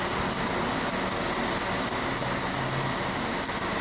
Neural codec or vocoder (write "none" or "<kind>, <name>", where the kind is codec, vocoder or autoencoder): none